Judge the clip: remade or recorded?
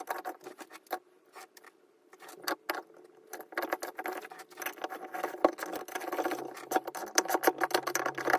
recorded